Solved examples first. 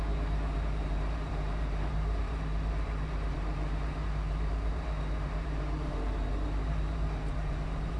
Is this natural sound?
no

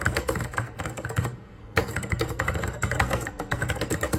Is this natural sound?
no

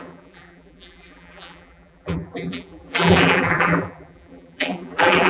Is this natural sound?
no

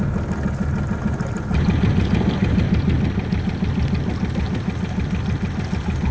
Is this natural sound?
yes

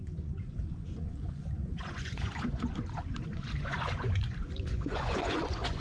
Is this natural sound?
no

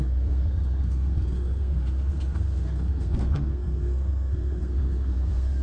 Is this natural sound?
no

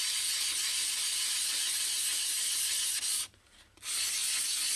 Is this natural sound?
yes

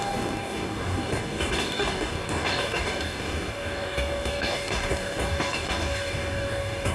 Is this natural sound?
no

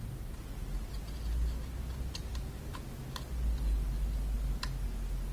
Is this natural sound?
yes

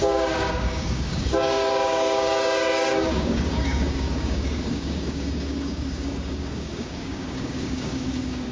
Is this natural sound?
no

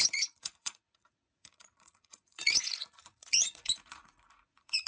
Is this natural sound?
no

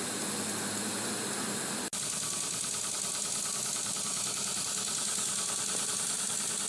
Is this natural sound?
yes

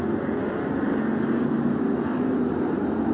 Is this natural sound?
yes